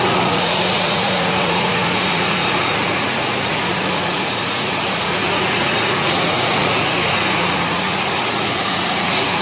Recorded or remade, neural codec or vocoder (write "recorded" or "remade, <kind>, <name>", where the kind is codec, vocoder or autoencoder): remade, vocoder, Vocos